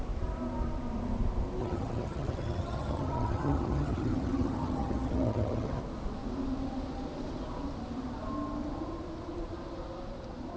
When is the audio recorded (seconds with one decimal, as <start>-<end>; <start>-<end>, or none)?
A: 0.0-1.6; 5.8-10.6